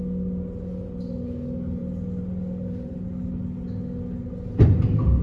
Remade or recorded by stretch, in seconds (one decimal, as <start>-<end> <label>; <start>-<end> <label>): 0.0-5.2 recorded